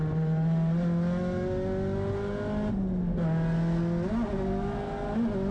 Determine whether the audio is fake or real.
real